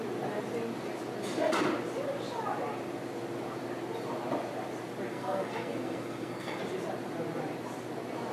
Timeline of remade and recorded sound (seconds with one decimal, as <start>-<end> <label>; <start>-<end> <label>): 0.0-5.1 recorded; 5.1-6.6 remade; 6.6-8.3 recorded